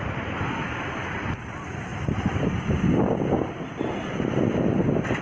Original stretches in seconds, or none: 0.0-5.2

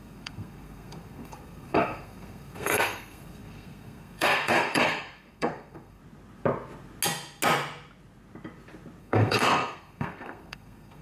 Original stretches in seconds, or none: 6.0-9.0